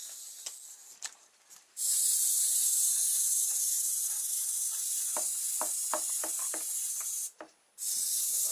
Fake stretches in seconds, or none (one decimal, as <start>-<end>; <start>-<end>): 0.7-7.2; 7.9-8.5